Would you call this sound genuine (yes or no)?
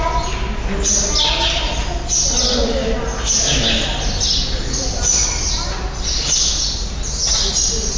yes